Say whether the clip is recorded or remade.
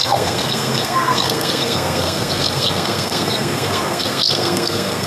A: remade